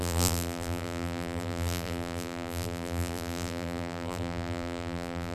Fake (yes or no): yes